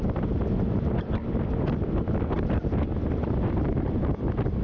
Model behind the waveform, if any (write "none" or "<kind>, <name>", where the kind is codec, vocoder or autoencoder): none